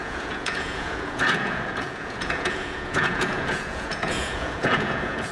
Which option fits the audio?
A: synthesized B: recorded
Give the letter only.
A